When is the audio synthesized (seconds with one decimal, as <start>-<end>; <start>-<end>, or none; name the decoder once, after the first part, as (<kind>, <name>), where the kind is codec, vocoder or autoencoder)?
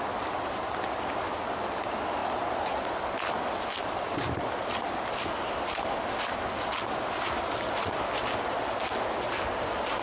none